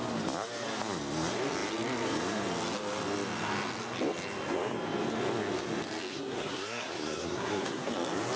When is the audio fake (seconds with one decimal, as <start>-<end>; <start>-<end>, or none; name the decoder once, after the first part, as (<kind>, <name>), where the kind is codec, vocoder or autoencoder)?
6.1-7.9 (codec, SNAC)